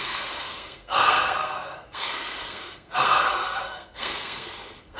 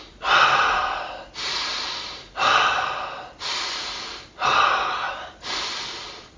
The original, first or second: second